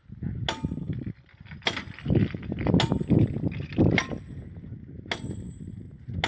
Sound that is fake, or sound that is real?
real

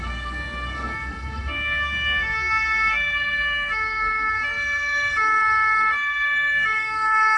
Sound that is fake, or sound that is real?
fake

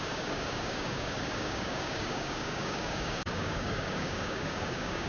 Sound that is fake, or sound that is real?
fake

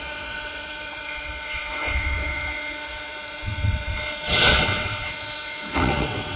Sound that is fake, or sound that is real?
fake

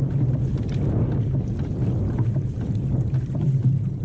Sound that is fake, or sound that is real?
real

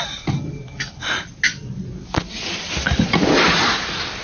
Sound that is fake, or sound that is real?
real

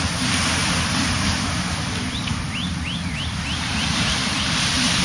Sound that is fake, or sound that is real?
real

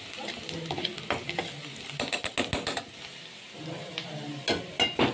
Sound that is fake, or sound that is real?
real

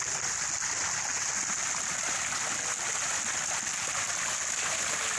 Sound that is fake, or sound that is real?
real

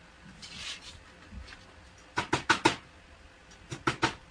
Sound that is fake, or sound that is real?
real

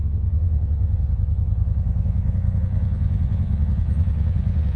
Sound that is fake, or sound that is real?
fake